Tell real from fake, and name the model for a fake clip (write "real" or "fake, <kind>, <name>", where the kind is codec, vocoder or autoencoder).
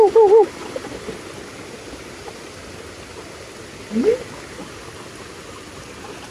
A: real